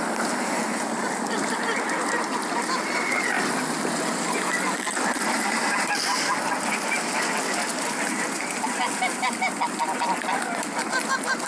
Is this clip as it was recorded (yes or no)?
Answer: yes